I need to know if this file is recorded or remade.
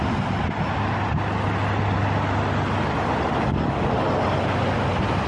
recorded